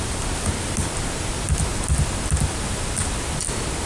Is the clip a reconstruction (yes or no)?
no